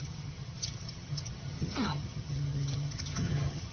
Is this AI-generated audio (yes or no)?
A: yes